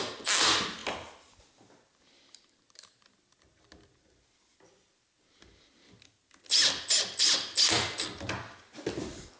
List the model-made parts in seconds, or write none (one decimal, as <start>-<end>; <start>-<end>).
none